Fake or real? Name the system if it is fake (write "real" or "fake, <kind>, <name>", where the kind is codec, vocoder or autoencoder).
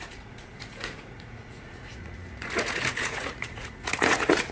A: fake, vocoder, Vocos